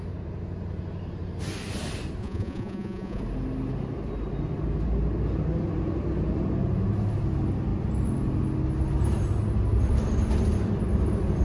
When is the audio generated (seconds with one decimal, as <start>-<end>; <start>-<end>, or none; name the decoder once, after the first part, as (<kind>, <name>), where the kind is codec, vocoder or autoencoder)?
2.2-3.2 (vocoder, Vocos)